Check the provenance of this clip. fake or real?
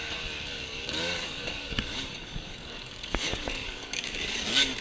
fake